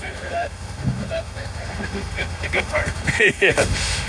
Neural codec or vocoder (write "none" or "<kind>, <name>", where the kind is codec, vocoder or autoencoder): autoencoder, DAC-VAE